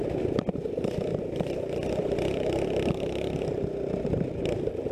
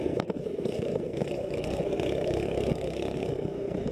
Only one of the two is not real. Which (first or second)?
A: second